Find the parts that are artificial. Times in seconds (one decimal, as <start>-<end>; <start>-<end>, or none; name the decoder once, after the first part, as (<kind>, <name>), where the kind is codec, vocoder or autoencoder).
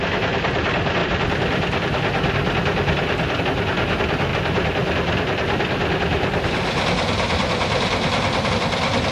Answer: 1.0-3.4 (vocoder, BigVGAN v2); 4.3-8.5